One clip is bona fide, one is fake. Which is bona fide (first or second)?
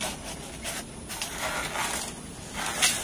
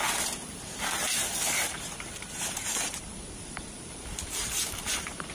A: first